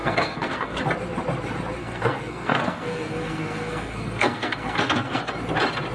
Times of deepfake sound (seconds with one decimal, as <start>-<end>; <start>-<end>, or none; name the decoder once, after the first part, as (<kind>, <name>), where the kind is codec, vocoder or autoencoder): 0.0-0.8 (codec, SNAC); 1.8-5.2